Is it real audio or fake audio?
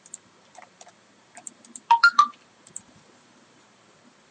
fake